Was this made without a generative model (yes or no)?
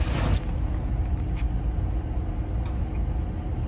yes